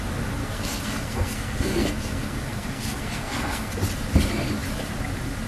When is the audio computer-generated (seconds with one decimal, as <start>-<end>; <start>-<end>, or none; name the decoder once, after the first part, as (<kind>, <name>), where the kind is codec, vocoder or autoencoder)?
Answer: 0.4-3.7 (codec, SNAC)